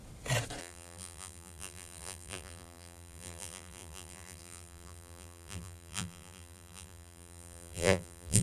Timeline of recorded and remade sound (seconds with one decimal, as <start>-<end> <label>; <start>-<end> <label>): 0.0-0.6 recorded; 0.6-8.4 remade